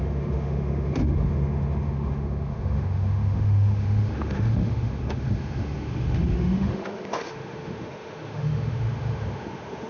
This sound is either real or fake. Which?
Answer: fake